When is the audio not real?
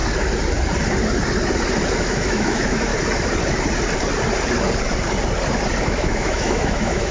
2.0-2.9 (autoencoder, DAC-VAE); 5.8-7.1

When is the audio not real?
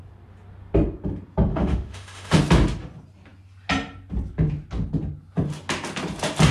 1.5-2.4 (autoencoder, DAC-VAE)